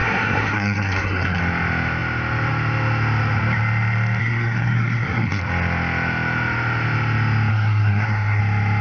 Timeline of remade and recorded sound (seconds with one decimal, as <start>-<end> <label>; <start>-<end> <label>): 0.0-1.4 remade; 1.4-4.2 recorded; 4.2-5.4 remade; 5.4-7.5 recorded; 7.5-8.4 remade; 8.4-8.8 recorded